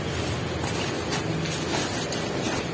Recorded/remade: recorded